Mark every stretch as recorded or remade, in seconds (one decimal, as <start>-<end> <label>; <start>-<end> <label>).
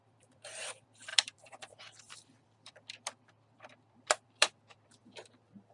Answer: 0.0-5.7 remade